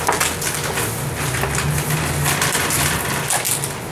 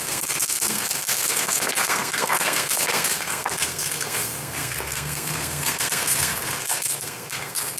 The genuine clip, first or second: first